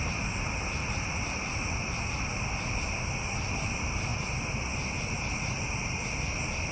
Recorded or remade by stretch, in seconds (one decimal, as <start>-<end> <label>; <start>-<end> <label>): 0.0-6.7 recorded